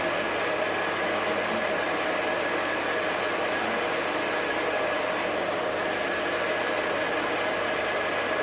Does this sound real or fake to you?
real